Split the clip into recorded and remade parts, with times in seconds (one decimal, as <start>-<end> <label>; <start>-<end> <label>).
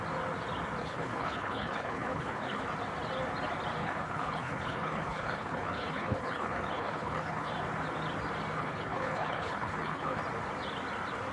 0.0-0.8 recorded; 0.8-2.6 remade; 2.6-3.8 recorded; 3.8-7.5 remade; 7.5-8.6 recorded; 8.6-10.2 remade; 10.2-11.3 recorded